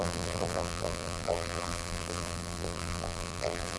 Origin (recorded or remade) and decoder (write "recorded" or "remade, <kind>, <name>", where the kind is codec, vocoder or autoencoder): remade, vocoder, BigVGAN v2